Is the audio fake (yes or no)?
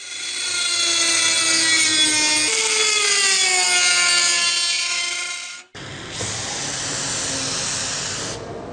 no